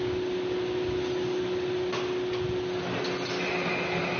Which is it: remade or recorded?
recorded